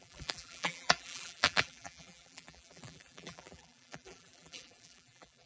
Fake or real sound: fake